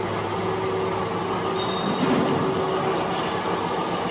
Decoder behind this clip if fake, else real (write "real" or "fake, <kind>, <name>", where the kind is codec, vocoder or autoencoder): real